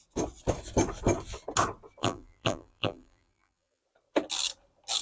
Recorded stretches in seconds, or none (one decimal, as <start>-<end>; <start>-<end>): 0.0-2.0; 3.8-5.0